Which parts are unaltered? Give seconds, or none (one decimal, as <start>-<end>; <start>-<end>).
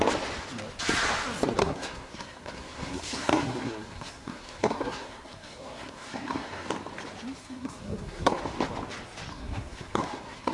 0.0-1.6; 6.7-7.4; 8.3-9.3